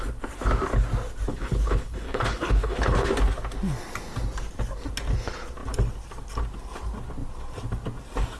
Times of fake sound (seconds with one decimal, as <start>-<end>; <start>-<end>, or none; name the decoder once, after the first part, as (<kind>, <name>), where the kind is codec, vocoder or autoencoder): 1.3-3.1 (codec, HILCodec)